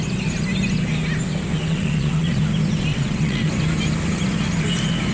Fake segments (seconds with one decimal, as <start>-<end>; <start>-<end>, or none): 1.5-2.4; 2.9-3.5